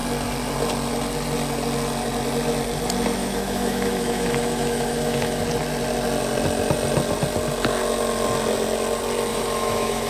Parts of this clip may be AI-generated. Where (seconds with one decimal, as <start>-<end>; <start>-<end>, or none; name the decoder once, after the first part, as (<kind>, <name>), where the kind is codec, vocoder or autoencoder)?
3.2-5.4 (autoencoder, DAC-VAE); 9.3-10.1